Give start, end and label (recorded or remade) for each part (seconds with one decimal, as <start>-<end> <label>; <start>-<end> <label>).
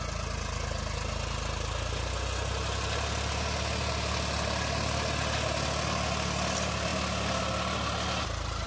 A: 0.0-8.7 recorded